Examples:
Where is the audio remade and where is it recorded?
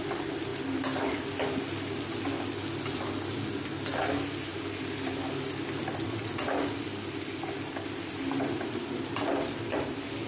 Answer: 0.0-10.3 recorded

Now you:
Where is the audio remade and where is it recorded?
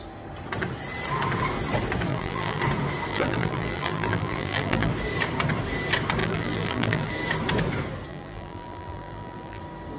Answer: 0.0-2.1 recorded; 2.1-2.6 remade; 2.6-3.1 recorded; 3.1-4.9 remade; 4.9-6.2 recorded; 6.2-7.1 remade; 7.1-8.1 recorded; 8.1-9.6 remade; 9.6-10.0 recorded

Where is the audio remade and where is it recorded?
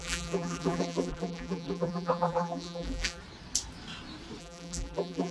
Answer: 0.0-3.2 remade; 3.2-4.4 recorded; 4.4-5.3 remade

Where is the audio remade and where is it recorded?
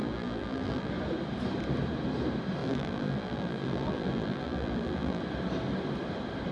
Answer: 0.0-0.9 remade; 0.9-2.6 recorded; 2.6-5.2 remade; 5.2-6.5 recorded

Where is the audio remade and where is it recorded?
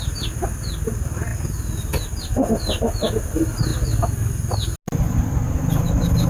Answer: 0.0-6.3 recorded